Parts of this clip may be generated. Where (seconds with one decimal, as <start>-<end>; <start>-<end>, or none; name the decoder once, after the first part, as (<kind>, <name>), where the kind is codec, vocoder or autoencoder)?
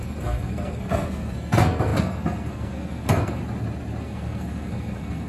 0.0-3.4 (codec, SNAC); 4.0-5.3